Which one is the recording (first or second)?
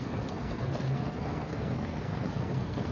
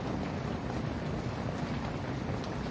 second